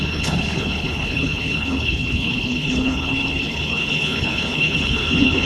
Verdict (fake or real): fake